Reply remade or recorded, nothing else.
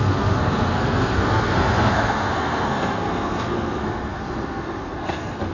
remade